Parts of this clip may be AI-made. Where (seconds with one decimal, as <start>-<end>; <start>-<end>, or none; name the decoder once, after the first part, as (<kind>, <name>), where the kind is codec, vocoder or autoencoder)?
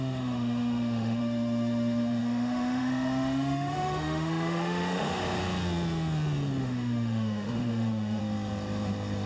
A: 0.0-5.2 (autoencoder, DAC-VAE); 6.6-8.2